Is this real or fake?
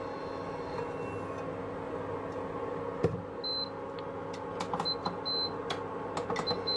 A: real